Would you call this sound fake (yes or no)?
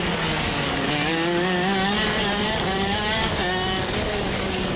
yes